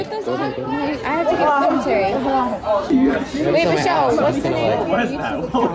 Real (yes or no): yes